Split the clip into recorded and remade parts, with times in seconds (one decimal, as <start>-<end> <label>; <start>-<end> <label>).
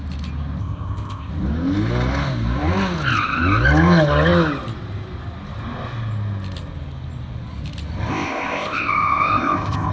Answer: 0.0-0.6 recorded; 0.6-1.3 remade; 1.3-8.1 recorded; 8.1-9.9 remade